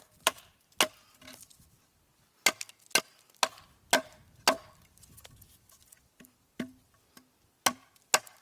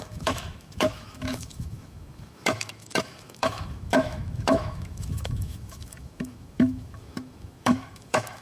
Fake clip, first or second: second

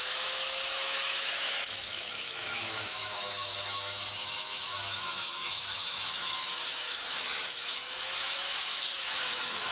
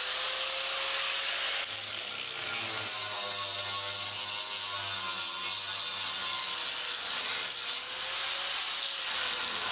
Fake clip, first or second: first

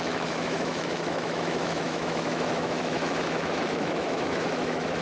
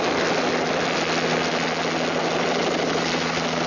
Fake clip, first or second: first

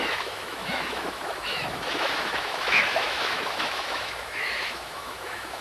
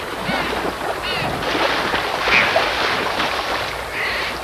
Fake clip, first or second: first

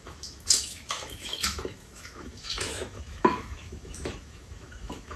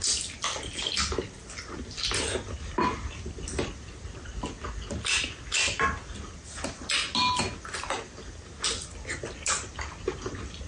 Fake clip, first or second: first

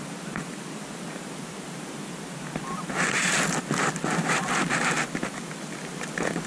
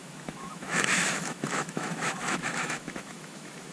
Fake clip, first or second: second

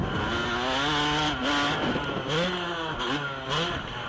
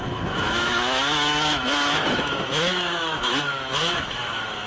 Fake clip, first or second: second